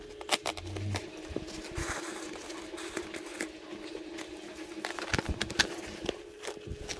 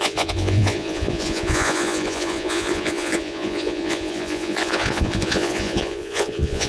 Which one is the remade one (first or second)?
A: second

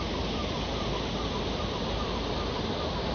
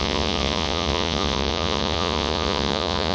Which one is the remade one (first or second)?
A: second